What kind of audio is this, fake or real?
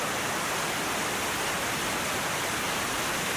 real